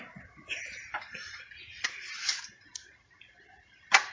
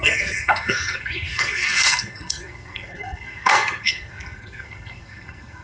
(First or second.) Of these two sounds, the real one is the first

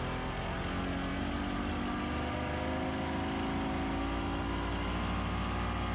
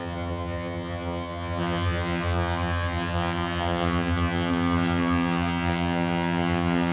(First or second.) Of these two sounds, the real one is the first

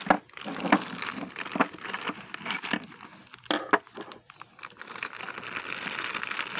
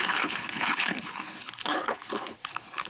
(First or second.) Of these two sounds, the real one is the first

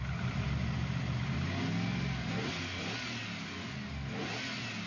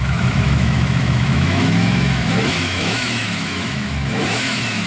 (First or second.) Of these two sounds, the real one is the first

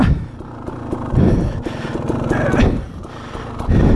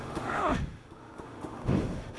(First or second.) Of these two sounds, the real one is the first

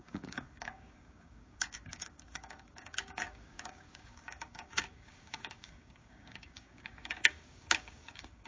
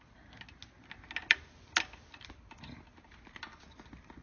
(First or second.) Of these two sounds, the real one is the second